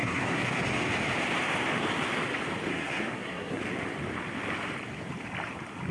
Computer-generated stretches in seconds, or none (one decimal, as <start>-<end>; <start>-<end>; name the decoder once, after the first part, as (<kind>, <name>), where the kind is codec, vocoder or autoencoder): 0.0-0.6 (codec, SNAC); 2.7-3.6